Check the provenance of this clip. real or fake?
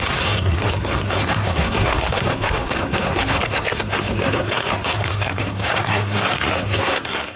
fake